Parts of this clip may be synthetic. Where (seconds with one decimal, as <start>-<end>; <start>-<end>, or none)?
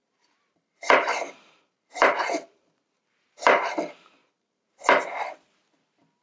0.0-3.7; 4.2-5.2